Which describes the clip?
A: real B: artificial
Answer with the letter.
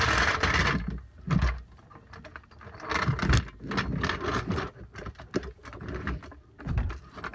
A